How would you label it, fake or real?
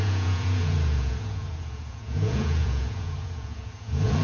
fake